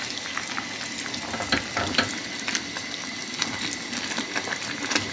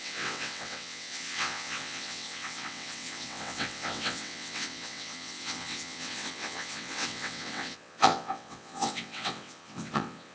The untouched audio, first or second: first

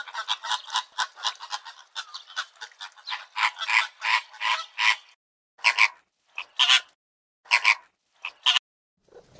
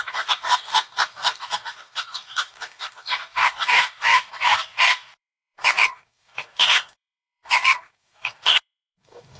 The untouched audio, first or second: first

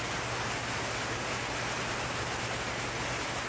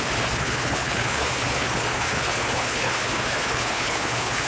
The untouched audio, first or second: first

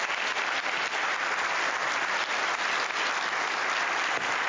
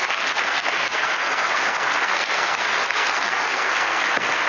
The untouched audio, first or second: first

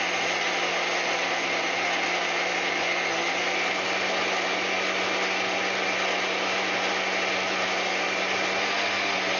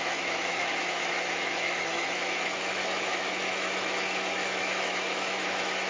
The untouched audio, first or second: first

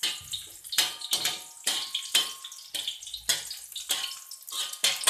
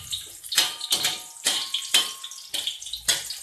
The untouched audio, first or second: first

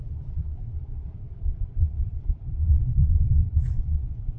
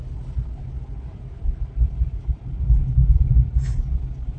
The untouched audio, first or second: second